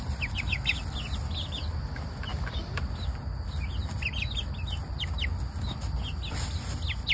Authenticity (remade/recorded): recorded